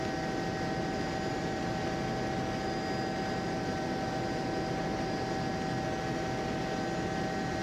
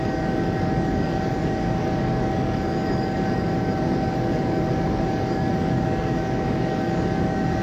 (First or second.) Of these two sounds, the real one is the first